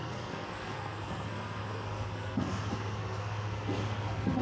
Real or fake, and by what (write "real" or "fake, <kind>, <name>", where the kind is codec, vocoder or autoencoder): fake, codec, SNAC